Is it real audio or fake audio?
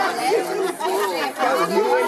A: real